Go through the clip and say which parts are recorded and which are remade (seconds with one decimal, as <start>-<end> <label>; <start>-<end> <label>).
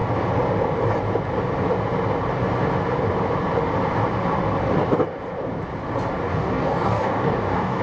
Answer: 0.0-6.3 recorded; 6.3-7.8 remade